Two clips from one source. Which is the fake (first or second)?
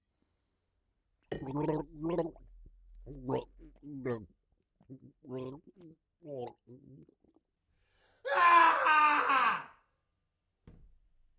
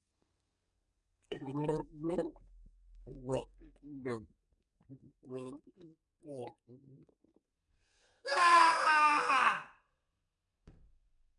second